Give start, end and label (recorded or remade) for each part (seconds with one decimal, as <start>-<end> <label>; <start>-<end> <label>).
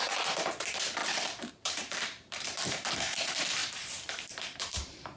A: 0.0-1.0 remade; 1.0-1.5 recorded; 1.5-5.2 remade